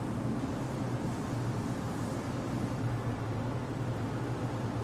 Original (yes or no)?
yes